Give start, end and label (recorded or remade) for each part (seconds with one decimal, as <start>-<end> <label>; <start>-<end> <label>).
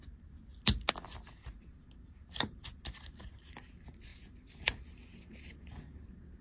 0.0-6.4 recorded